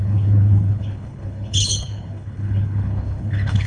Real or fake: fake